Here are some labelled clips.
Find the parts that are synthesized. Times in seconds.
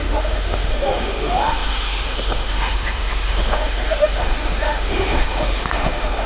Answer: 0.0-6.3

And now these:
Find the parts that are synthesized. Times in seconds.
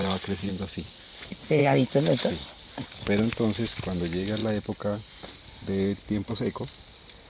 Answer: 0.0-0.5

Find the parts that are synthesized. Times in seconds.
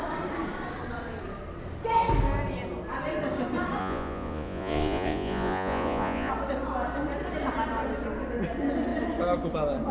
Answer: 3.8-6.3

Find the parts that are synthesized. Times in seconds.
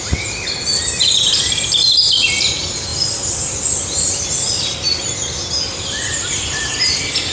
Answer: none